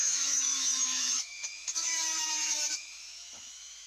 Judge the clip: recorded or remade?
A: remade